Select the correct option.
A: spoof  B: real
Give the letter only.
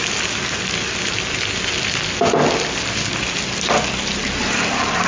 B